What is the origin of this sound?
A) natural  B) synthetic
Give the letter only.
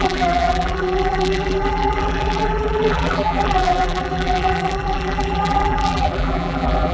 B